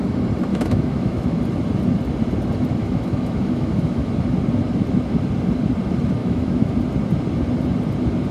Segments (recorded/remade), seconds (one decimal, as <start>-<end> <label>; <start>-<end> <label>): 0.0-0.5 recorded; 0.5-1.4 remade; 1.4-2.8 recorded; 2.8-4.1 remade; 4.1-6.2 recorded; 6.2-6.7 remade; 6.7-8.3 recorded